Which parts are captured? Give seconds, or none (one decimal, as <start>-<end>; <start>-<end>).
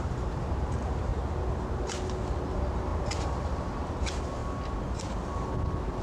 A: 1.1-2.4; 4.4-6.0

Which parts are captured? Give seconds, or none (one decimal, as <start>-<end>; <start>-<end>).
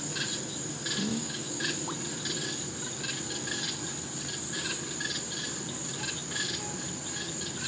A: 0.0-1.1; 1.6-7.7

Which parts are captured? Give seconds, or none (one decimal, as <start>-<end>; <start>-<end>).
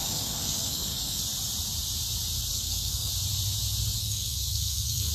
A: 1.2-2.5; 3.1-4.0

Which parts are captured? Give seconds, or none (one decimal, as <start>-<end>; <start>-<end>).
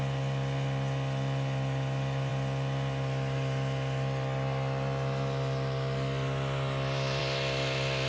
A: 0.0-8.1